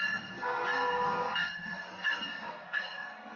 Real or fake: fake